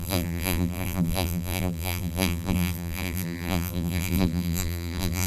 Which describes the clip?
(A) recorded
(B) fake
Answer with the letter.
B